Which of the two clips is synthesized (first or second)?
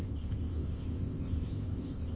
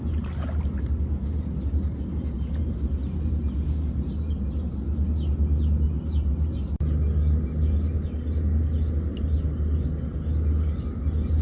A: first